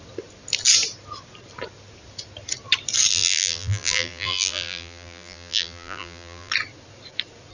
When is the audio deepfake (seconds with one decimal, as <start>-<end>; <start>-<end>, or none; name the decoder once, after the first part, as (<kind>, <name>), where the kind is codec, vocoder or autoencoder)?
3.1-6.5 (vocoder, BigVGAN v2)